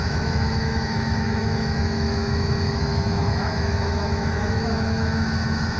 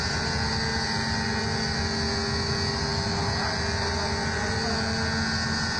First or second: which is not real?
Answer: first